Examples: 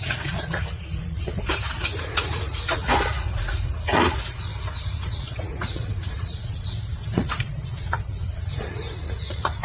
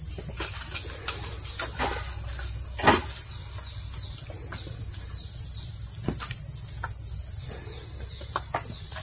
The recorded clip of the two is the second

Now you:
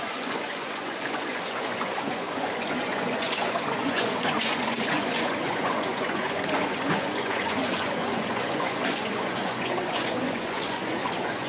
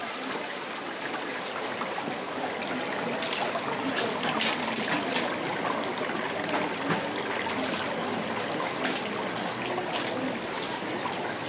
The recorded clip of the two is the second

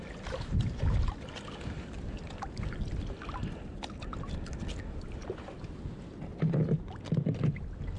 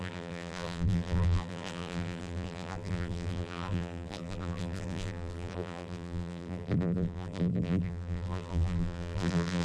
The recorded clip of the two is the first